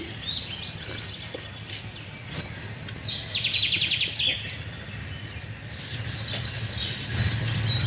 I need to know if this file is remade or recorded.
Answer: recorded